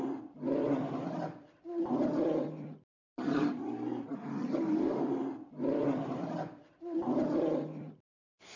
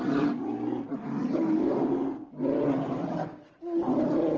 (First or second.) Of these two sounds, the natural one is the second